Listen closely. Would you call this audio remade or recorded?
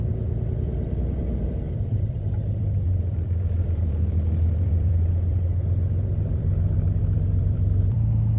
remade